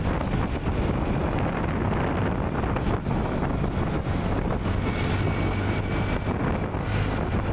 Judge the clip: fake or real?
real